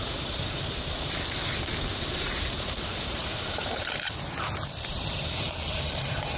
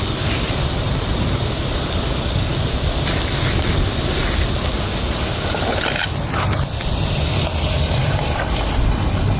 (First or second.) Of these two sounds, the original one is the second